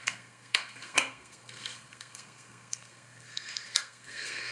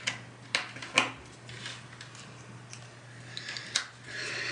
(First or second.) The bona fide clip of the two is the second